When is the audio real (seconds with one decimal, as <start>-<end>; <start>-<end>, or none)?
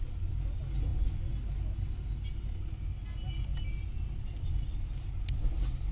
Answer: 0.0-5.9